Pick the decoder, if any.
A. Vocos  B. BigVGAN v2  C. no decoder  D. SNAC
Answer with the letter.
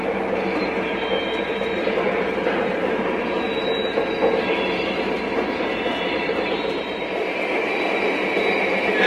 B